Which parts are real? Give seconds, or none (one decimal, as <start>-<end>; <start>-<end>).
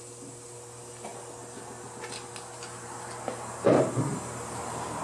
0.0-5.0